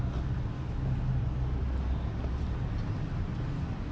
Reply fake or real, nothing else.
real